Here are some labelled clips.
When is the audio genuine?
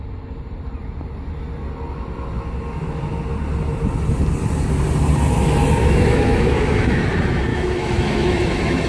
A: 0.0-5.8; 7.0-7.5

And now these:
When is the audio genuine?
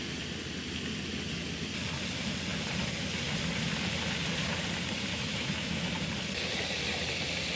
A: 0.0-5.1; 5.9-7.6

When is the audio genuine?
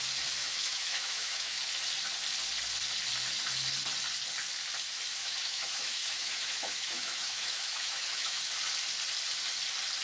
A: 0.0-0.4; 1.6-5.2; 8.4-10.0